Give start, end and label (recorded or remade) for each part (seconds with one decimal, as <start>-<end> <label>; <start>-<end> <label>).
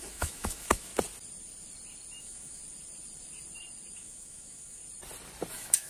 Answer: 0.0-0.9 remade; 0.9-2.2 recorded; 2.2-2.6 remade; 2.6-3.9 recorded; 3.9-4.8 remade; 4.8-5.5 recorded; 5.5-5.9 remade